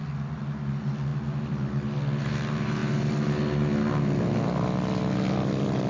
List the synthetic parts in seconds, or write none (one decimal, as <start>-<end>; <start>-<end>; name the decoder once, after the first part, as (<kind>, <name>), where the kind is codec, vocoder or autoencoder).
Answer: none